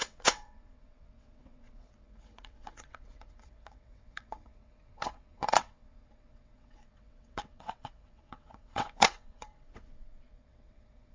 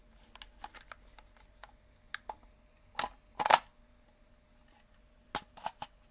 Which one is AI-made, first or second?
first